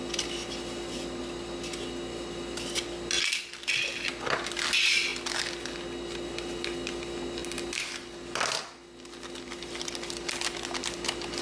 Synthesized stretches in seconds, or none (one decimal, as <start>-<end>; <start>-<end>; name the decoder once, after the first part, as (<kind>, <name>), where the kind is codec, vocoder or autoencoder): none